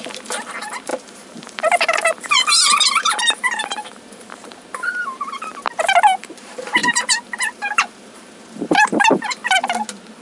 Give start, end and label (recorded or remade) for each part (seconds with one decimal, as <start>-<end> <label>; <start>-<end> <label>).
0.0-5.5 remade; 5.5-6.2 recorded; 6.2-9.4 remade; 9.4-10.2 recorded